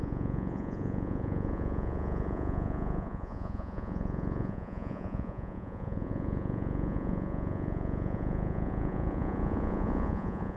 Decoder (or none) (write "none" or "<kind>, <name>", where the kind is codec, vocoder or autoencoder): vocoder, Vocos